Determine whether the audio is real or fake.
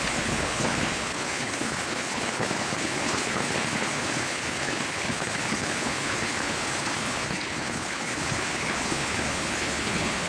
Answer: fake